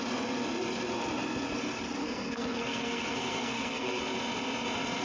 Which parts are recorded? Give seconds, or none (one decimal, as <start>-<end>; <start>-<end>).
0.0-2.0; 4.0-5.0